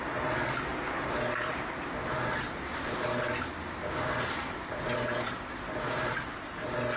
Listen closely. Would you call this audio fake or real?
real